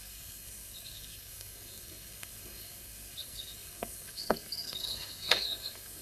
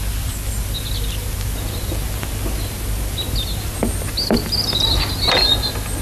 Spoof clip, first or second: first